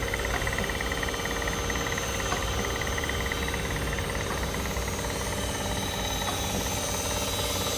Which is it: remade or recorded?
recorded